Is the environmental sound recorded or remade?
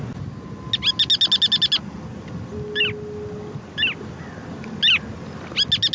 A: recorded